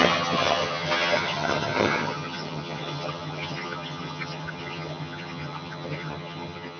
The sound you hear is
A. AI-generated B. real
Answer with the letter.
A